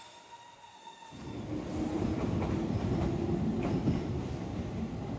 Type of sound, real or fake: real